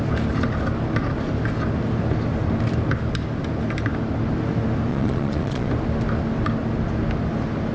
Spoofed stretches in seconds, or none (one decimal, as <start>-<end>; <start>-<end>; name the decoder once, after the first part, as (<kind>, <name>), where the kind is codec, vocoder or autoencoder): 4.9-5.7 (vocoder, Vocos)

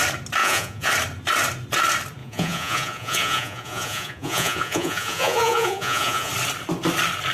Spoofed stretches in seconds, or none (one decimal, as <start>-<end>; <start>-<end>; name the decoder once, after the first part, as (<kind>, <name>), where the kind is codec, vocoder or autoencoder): 0.4-0.9 (vocoder, Vocos); 2.2-6.3

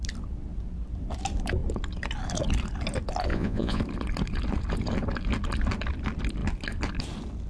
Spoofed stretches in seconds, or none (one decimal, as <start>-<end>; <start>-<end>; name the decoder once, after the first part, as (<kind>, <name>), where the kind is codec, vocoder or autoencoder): 3.3-3.8 (vocoder, Vocos)